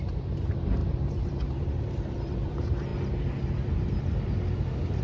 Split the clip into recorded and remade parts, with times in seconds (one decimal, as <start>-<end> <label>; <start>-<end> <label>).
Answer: 0.0-2.9 remade; 2.9-5.0 recorded